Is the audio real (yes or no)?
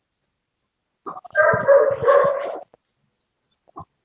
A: yes